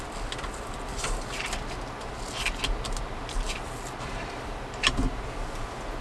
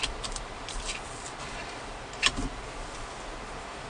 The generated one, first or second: second